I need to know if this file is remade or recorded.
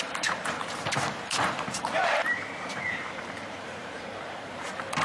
remade